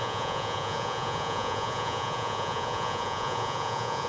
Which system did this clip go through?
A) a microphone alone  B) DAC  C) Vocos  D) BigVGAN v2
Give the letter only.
C